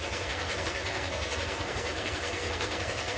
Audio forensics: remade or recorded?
remade